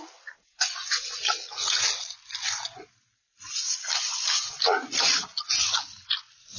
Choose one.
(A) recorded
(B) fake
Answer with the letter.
A